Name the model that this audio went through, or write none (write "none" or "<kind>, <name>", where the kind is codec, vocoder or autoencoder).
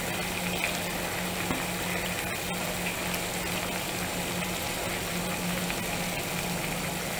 none